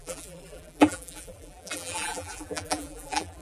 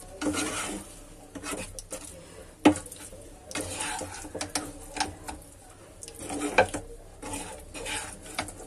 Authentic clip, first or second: second